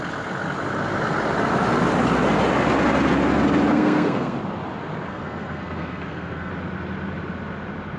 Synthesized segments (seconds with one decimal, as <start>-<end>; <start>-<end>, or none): 3.7-4.4; 5.1-6.5